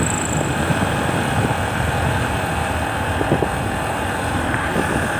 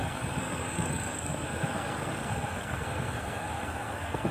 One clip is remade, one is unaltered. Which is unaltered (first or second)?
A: first